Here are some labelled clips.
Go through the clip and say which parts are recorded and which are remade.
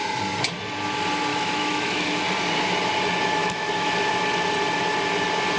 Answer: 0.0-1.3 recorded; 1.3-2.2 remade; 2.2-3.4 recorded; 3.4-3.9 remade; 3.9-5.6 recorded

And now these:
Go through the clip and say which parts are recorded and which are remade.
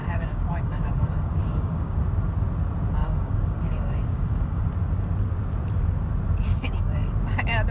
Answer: 0.0-2.0 remade; 2.0-3.0 recorded; 3.0-4.6 remade; 4.6-6.5 recorded; 6.5-7.1 remade; 7.1-7.7 recorded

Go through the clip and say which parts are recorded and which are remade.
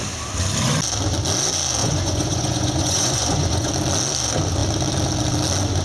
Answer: 0.0-1.8 recorded; 1.8-3.7 remade; 3.7-5.8 recorded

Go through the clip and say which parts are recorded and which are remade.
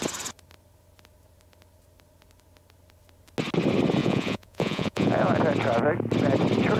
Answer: 0.0-4.0 recorded; 4.0-5.4 remade; 5.4-6.8 recorded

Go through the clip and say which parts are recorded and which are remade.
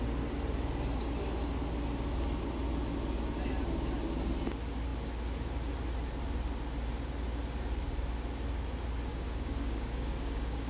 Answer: 0.0-9.1 recorded; 9.1-10.7 remade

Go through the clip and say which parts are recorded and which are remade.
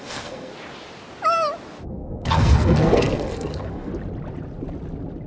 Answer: 0.0-0.5 remade; 0.5-1.9 recorded; 1.9-3.9 remade; 3.9-5.3 recorded